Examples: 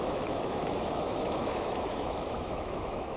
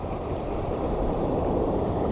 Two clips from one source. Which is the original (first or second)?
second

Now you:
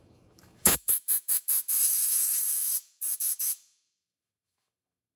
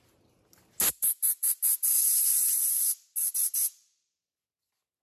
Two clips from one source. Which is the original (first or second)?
second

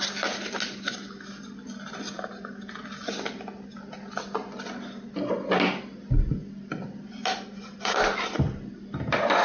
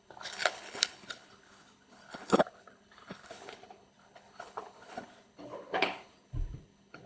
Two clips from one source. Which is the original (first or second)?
first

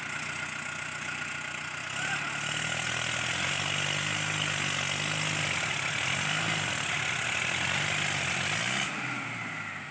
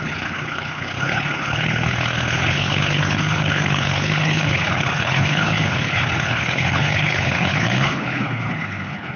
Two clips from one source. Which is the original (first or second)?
first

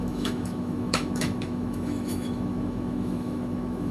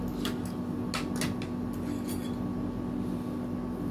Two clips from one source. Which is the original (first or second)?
second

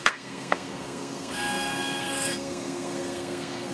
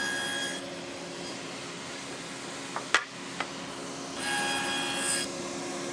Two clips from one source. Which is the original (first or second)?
second